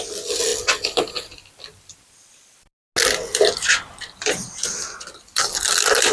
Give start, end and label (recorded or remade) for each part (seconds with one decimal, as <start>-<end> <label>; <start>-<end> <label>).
0.0-2.7 remade; 2.7-5.2 recorded; 5.2-6.1 remade